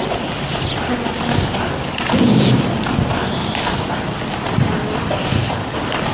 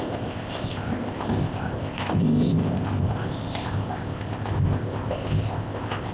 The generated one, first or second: second